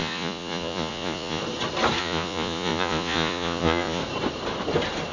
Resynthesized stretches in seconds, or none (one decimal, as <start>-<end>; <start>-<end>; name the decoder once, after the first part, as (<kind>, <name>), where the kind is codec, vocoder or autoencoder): 0.0-1.4 (vocoder, Vocos); 2.0-4.0